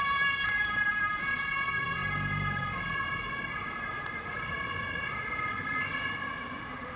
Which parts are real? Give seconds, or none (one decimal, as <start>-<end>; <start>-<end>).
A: none